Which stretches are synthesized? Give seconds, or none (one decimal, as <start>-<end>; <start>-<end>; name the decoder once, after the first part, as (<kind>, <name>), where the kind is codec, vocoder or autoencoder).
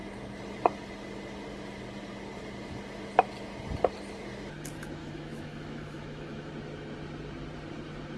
5.0-6.5 (autoencoder, DAC-VAE)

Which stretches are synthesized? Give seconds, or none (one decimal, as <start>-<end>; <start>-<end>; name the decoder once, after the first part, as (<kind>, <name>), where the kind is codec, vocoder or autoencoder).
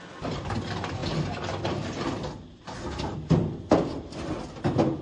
none